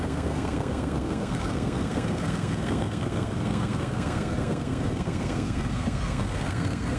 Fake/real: fake